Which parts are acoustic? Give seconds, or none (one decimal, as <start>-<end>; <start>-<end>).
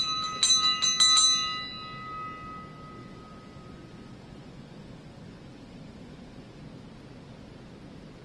0.0-3.0; 6.6-8.2